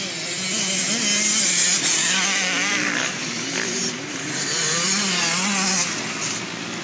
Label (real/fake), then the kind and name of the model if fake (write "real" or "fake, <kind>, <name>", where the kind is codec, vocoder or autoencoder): real